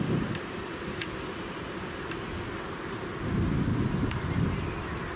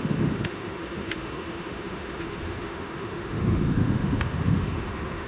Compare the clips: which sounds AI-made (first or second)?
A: second